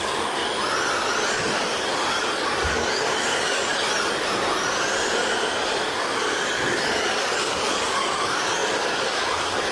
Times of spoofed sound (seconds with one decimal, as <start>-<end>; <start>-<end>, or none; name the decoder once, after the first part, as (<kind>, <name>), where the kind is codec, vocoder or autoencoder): 0.0-0.4 (codec, DAC); 1.3-3.7; 6.0-9.7